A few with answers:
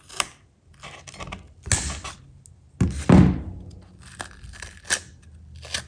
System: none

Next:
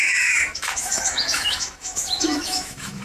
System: autoencoder, DAC-VAE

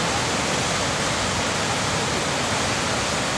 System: none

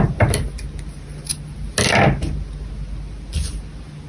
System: none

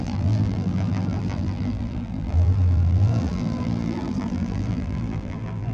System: vocoder, BigVGAN v2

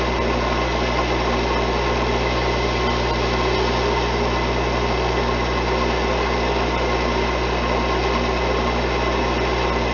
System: none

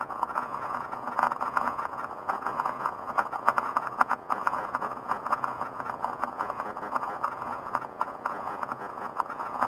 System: vocoder, Vocos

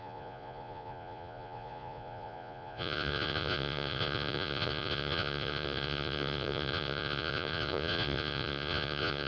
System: vocoder, Vocos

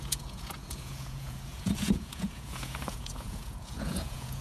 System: vocoder, Vocos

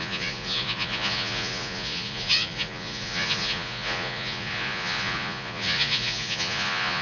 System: vocoder, Vocos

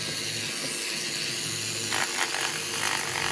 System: none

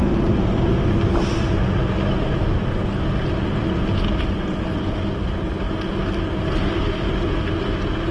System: none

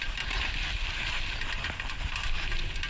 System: none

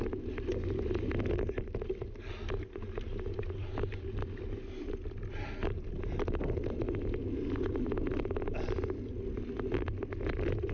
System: none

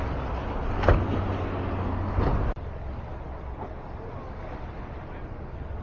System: none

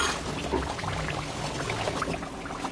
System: none